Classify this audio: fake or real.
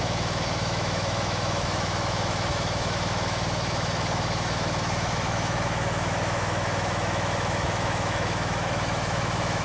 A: fake